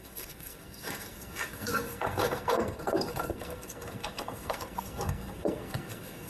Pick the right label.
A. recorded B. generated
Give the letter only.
B